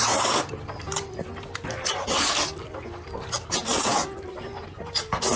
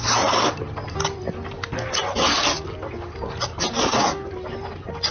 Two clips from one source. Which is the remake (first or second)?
first